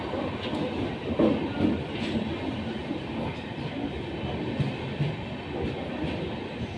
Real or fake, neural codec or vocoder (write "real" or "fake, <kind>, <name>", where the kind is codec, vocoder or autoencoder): real